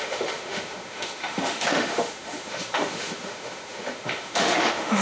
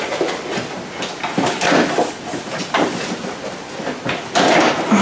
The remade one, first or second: first